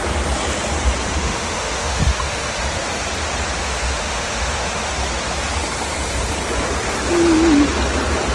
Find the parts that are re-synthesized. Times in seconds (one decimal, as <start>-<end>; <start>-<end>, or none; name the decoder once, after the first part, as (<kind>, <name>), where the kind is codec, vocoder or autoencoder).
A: 1.2-2.6 (autoencoder, DAC-VAE); 3.6-4.9